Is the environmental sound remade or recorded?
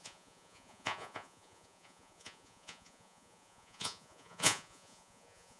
remade